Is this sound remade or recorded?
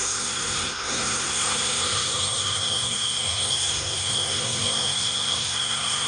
remade